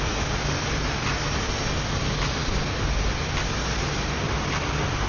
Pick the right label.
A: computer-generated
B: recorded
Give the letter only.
B